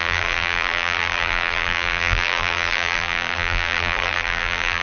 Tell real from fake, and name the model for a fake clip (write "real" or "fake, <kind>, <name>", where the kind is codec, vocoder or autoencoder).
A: fake, vocoder, BigVGAN v2